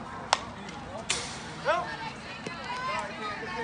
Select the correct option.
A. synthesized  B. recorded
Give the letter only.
B